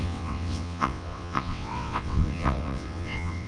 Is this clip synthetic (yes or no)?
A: yes